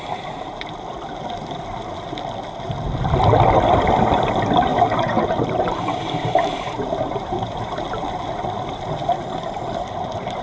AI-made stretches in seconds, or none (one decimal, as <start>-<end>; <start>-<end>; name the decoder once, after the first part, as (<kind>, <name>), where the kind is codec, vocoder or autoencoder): 4.7-7.6 (vocoder, BigVGAN v2)

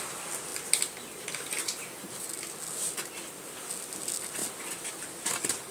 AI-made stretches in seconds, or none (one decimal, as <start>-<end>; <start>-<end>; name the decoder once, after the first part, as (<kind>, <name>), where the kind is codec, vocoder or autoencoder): none

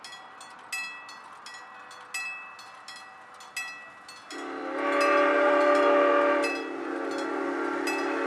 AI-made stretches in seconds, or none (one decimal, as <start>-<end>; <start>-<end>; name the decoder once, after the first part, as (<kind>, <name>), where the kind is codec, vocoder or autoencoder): none

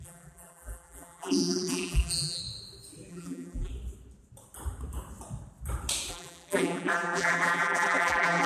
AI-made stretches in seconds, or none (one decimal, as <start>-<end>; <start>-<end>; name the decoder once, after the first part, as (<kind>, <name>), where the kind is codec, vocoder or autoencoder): 0.0-2.4 (vocoder, BigVGAN v2); 3.1-3.7; 6.1-8.5